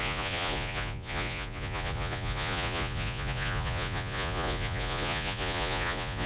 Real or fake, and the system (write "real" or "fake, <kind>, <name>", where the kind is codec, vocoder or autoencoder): fake, vocoder, Vocos